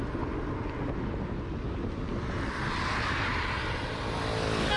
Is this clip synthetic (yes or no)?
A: no